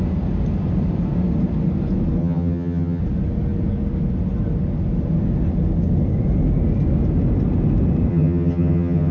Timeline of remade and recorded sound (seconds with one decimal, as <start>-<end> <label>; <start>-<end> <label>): 0.0-2.2 recorded; 2.2-3.0 remade; 3.0-8.1 recorded; 8.1-9.1 remade